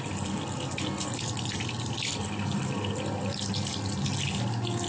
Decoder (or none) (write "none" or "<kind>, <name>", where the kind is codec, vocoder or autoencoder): none